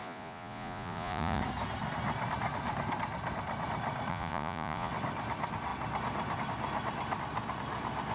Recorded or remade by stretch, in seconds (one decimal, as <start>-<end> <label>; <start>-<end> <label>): 0.0-1.4 remade; 1.4-4.1 recorded; 4.1-4.9 remade; 4.9-8.1 recorded